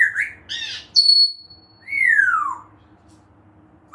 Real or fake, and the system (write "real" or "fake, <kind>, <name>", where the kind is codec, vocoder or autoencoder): real